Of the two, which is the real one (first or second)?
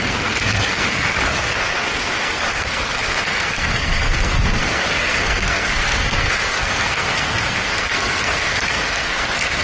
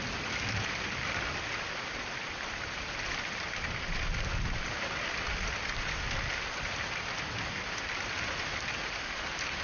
second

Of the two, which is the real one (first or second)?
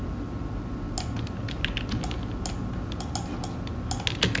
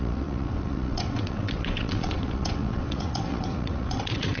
first